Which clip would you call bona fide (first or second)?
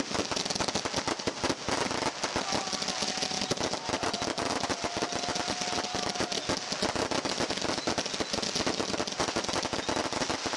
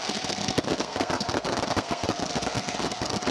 first